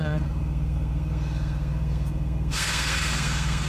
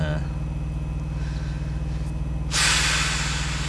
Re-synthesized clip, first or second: first